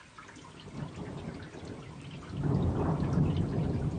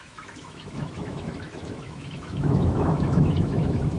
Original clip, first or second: first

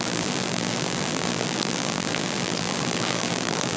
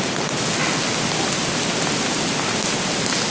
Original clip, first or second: second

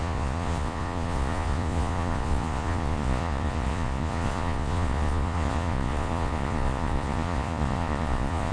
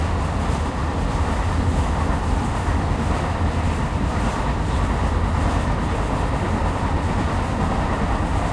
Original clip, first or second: second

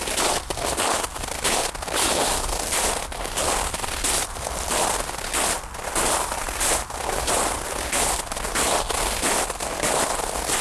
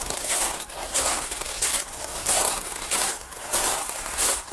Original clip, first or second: first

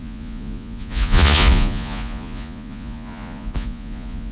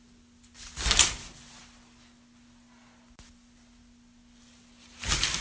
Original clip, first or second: second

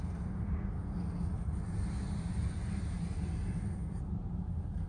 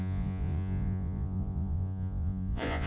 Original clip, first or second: first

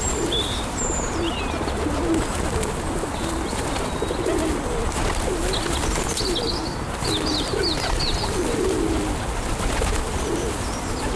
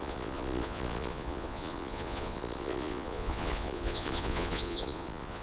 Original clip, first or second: first